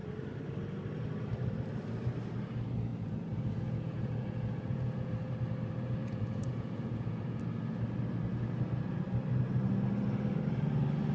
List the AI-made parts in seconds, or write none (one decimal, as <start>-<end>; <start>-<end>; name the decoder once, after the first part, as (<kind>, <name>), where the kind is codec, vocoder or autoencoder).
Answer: 2.9-5.1 (vocoder, Vocos); 6.0-7.4